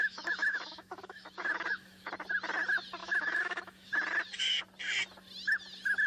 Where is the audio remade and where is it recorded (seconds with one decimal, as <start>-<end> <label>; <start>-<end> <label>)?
0.0-2.1 remade; 2.1-3.0 recorded; 3.0-3.9 remade; 3.9-6.1 recorded